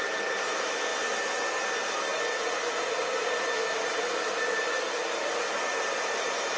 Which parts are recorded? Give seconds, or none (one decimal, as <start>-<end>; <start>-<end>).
0.0-6.6